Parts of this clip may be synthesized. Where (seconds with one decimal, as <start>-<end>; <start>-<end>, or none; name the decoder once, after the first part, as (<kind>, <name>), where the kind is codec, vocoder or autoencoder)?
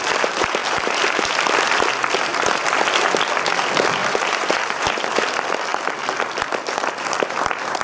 0.6-1.3 (vocoder, BigVGAN v2); 4.0-5.0